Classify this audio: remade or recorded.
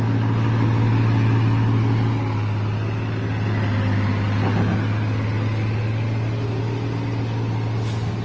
recorded